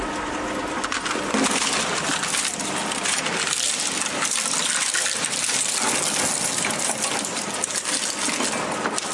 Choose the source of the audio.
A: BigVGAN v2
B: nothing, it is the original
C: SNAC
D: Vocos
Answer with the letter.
B